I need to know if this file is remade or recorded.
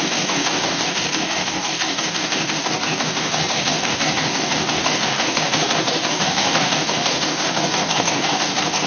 remade